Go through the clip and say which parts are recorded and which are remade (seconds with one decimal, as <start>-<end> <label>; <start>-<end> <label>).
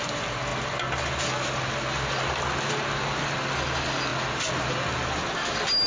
0.0-5.9 recorded